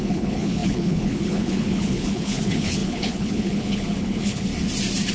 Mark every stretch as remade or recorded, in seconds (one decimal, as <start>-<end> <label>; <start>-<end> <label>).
0.0-4.5 remade; 4.5-5.1 recorded